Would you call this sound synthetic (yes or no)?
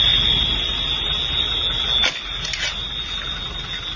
no